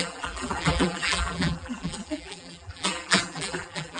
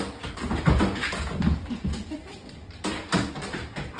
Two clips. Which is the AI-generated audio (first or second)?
first